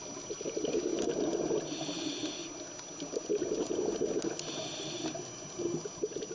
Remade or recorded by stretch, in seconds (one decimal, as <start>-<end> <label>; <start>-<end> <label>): 0.0-6.3 recorded